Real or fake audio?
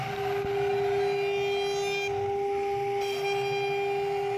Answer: real